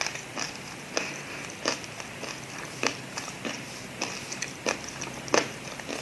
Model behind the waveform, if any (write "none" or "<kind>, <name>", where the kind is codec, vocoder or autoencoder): vocoder, BigVGAN v2